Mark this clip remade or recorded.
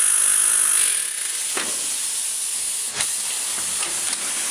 recorded